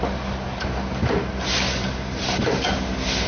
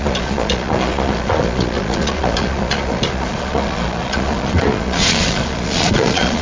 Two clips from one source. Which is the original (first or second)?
first